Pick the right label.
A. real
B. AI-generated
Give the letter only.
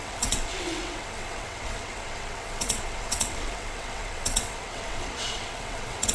B